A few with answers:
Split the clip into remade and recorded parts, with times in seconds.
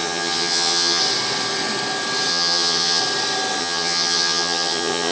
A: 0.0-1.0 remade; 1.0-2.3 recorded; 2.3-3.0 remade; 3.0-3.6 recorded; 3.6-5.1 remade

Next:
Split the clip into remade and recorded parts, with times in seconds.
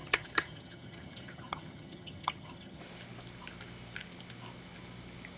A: 0.0-2.8 remade; 2.8-5.4 recorded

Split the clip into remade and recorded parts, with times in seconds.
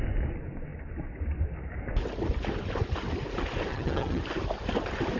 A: 0.0-3.7 recorded; 3.7-4.2 remade; 4.2-5.2 recorded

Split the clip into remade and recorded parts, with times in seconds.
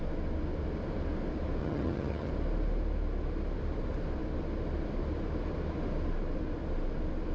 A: 0.0-1.6 recorded; 1.6-2.3 remade; 2.3-7.3 recorded